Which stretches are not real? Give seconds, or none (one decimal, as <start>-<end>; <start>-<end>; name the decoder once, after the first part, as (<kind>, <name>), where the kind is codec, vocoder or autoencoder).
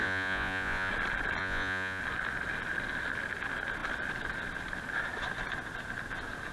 0.0-0.9 (vocoder, Vocos); 1.4-2.0